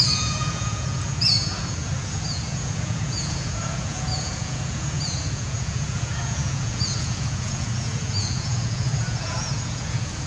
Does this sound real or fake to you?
fake